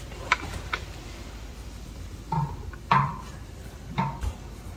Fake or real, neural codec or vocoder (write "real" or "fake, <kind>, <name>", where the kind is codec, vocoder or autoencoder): fake, vocoder, BigVGAN v2